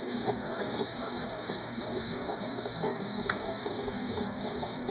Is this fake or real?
fake